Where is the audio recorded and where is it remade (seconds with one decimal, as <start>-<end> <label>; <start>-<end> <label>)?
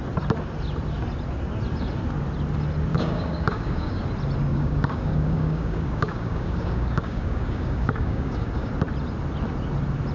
0.0-2.9 recorded; 2.9-4.0 remade; 4.0-4.5 recorded; 4.5-8.7 remade; 8.7-10.1 recorded